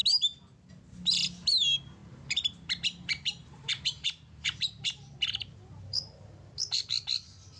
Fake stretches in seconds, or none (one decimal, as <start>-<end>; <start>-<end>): 2.0-6.6